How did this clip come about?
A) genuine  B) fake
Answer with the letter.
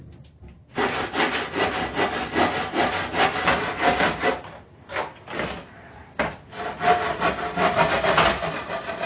A